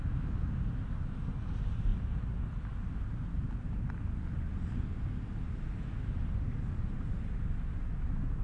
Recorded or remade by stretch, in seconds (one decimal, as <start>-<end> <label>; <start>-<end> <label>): 0.0-8.4 recorded